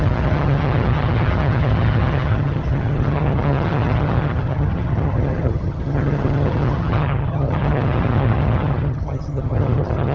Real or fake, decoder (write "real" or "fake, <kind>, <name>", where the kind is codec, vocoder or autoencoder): fake, vocoder, HiFi-GAN